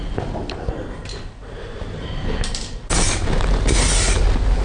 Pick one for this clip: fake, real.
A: real